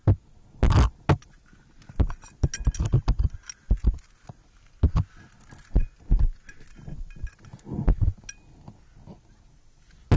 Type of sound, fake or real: real